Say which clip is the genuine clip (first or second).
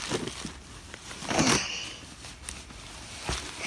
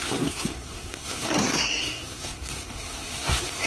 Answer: first